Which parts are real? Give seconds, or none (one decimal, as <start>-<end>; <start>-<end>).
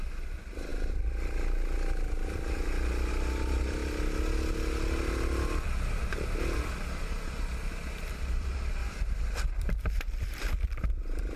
3.8-8.1; 8.8-9.6